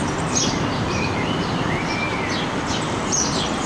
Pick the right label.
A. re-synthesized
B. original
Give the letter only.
A